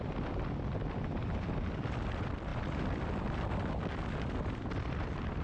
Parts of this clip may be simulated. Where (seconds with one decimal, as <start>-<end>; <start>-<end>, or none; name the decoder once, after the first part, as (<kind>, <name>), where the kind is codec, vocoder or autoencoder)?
0.0-5.4 (vocoder, BigVGAN v2)